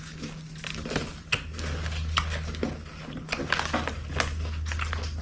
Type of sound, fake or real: real